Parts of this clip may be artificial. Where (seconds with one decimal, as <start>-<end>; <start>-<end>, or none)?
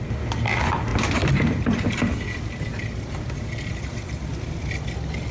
0.9-1.8